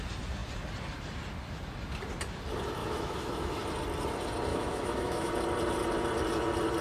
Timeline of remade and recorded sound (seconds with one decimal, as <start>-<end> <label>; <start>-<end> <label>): 0.0-2.8 recorded; 2.8-3.6 remade; 3.6-4.5 recorded; 4.5-5.3 remade; 5.3-6.8 recorded